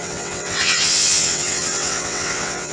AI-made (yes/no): yes